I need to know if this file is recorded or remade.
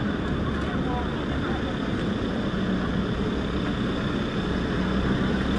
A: recorded